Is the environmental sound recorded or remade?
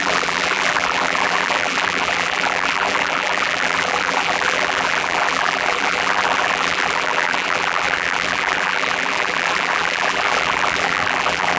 remade